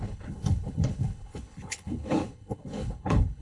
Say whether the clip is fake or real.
fake